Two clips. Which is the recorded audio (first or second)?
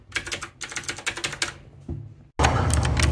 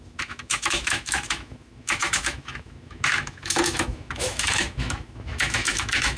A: first